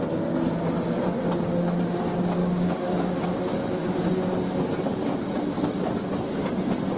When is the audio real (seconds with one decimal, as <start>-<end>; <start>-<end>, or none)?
0.0-2.4; 3.4-7.0